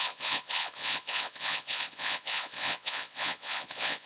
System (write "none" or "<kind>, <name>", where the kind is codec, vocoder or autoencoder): vocoder, Vocos